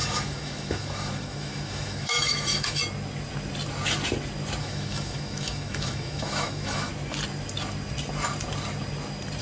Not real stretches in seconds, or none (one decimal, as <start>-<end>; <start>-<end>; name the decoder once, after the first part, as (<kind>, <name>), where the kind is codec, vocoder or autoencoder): 0.0-2.8 (autoencoder, DAC-VAE); 4.6-6.9